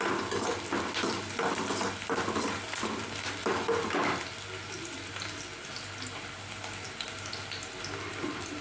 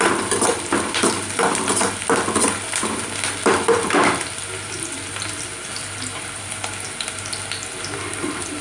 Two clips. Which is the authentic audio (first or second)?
first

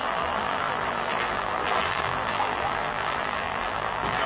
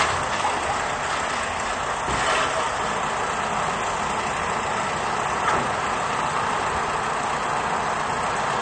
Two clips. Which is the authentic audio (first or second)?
second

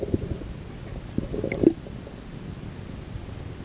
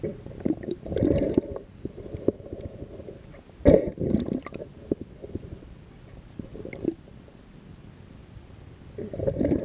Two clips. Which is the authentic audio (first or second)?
first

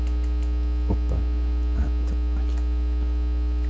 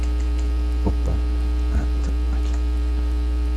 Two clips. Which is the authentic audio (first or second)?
first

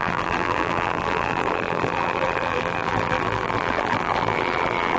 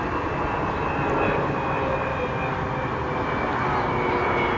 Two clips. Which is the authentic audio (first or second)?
second